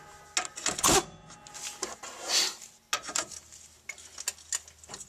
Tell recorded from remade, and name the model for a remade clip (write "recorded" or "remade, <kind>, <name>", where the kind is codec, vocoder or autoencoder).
recorded